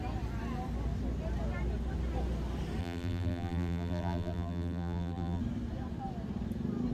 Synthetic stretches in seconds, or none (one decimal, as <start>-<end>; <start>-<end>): 2.8-5.4